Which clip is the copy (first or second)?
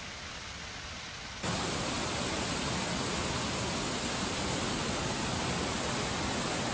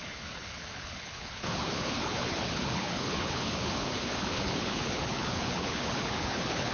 second